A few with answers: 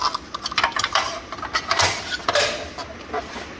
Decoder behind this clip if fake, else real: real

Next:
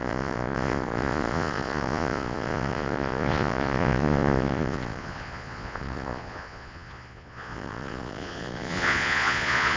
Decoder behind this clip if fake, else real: fake, vocoder, Vocos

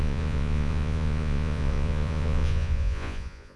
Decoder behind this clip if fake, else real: fake, vocoder, Vocos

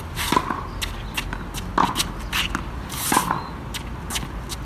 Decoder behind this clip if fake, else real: real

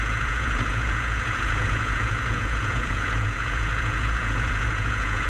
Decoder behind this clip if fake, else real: fake, vocoder, Vocos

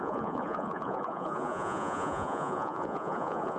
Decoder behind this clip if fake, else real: fake, vocoder, Vocos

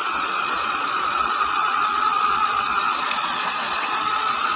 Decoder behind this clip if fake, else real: fake, vocoder, Vocos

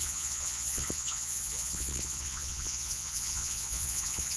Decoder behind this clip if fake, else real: fake, vocoder, Vocos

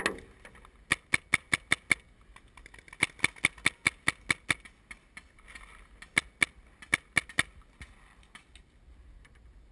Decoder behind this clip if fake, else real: real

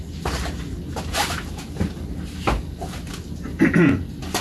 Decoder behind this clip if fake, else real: real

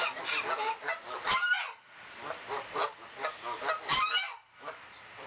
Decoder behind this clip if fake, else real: real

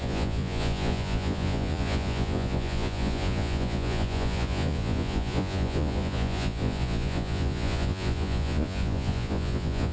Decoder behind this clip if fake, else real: fake, vocoder, Vocos